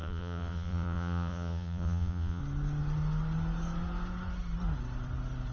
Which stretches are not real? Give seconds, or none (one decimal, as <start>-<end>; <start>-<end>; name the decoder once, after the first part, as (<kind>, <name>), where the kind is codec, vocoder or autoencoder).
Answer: 0.0-2.4 (vocoder, Vocos)